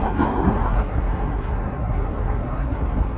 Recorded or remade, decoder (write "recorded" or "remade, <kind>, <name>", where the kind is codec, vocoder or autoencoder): remade, codec, SNAC